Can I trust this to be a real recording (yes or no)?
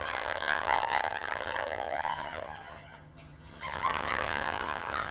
no